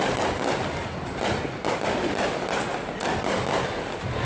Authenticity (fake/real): real